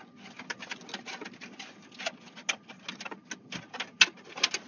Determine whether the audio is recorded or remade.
recorded